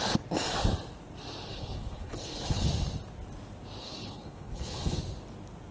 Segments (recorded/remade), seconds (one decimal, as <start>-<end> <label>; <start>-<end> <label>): 0.0-1.5 recorded; 1.5-2.7 remade; 2.7-3.8 recorded; 3.8-5.0 remade; 5.0-5.7 recorded